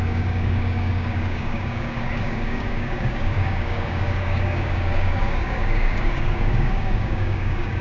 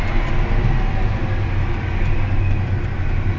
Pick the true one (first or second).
second